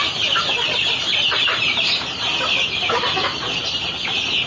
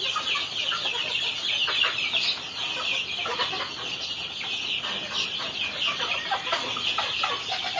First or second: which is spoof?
first